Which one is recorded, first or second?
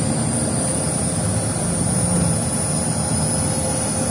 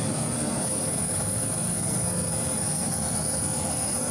first